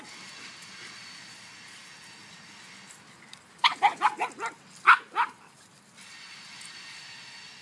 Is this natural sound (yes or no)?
yes